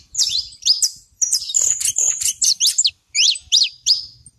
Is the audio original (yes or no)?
no